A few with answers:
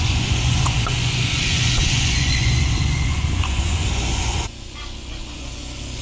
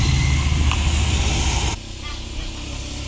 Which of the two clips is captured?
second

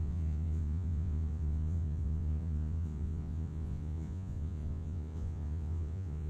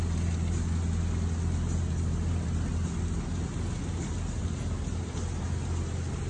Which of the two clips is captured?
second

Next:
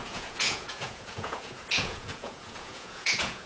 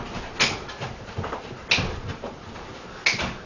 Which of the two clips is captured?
second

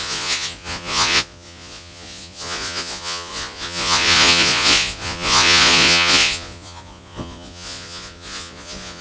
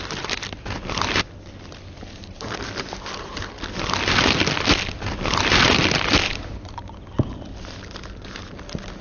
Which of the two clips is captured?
second